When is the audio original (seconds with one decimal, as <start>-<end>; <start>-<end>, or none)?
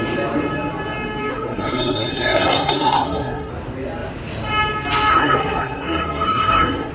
0.0-1.3; 3.5-5.1